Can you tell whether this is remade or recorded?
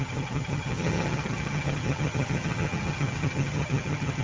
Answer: remade